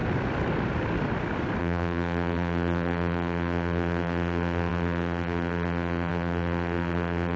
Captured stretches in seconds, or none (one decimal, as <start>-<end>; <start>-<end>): 0.0-1.6